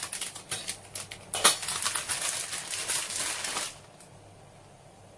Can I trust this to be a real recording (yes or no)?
yes